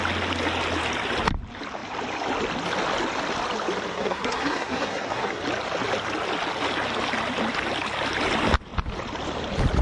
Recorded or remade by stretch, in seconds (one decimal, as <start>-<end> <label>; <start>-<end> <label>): 0.0-3.9 recorded; 3.9-5.4 remade; 5.4-9.8 recorded